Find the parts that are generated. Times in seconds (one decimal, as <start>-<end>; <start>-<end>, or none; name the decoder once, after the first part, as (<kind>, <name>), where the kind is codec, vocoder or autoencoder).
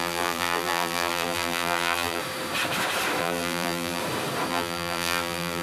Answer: 0.0-2.2 (vocoder, BigVGAN v2); 3.2-4.0; 4.5-5.6